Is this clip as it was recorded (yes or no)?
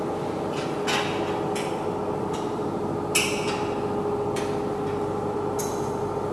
yes